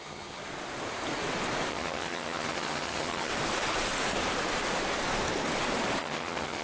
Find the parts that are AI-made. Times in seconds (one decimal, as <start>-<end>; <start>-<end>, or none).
0.0-0.4; 1.7-3.3; 6.0-6.6